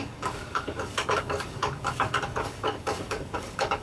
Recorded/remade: remade